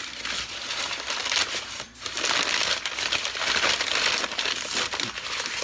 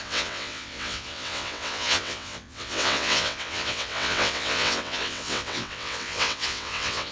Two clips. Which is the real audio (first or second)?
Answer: first